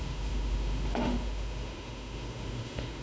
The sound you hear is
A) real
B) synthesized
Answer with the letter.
B